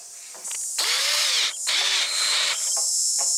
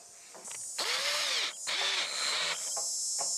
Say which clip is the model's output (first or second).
first